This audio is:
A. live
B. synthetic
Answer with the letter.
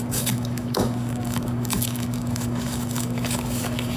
B